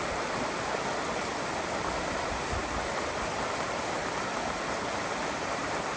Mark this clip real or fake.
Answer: real